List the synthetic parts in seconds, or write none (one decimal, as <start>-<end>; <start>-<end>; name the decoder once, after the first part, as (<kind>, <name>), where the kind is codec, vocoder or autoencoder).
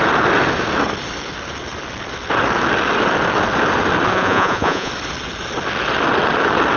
4.1-4.9 (vocoder, Vocos)